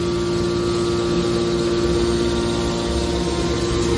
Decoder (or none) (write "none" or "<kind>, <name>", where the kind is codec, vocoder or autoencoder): none